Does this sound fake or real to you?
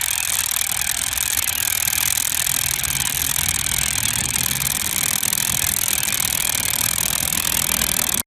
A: real